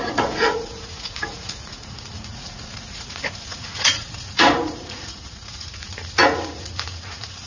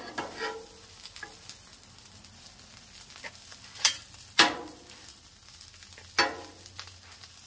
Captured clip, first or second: second